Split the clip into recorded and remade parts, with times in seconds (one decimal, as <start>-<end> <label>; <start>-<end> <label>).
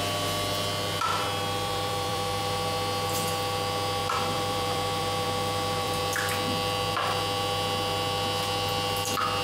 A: 0.0-1.1 recorded; 1.1-2.4 remade; 2.4-4.0 recorded; 4.0-6.0 remade; 6.0-9.4 recorded